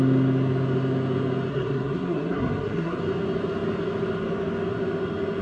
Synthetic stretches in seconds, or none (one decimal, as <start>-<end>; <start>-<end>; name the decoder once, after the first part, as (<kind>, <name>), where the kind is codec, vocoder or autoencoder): 1.5-3.0 (codec, SNAC)